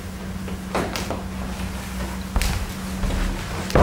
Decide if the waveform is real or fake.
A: real